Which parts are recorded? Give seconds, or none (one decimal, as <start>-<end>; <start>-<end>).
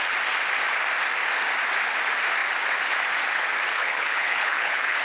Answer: 0.0-3.7